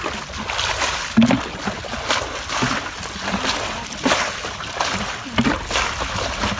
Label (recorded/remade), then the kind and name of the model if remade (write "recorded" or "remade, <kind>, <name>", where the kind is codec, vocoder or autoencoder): recorded